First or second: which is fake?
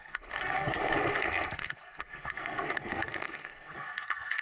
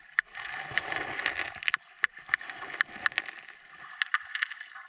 first